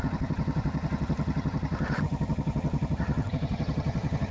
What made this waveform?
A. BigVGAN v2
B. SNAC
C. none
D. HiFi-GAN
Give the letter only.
D